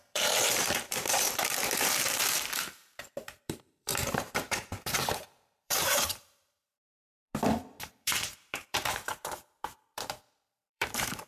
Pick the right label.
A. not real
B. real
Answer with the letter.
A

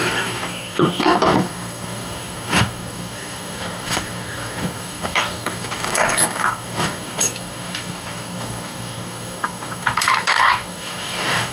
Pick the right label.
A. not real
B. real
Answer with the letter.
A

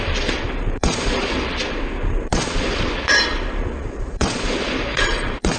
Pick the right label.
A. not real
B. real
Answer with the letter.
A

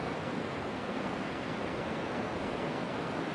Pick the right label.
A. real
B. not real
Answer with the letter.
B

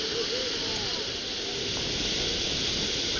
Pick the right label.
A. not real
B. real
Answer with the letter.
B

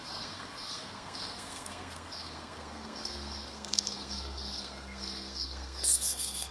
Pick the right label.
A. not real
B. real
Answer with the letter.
A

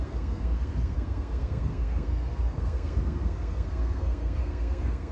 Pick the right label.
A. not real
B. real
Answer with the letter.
A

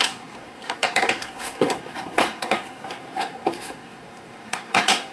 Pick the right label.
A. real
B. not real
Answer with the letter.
B